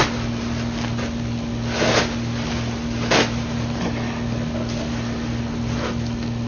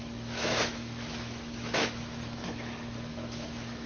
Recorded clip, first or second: first